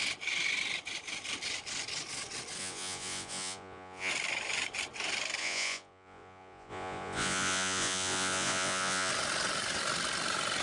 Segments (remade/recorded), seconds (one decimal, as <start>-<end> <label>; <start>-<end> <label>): 0.0-2.6 recorded; 2.6-4.1 remade; 4.1-5.4 recorded; 5.4-9.1 remade; 9.1-10.6 recorded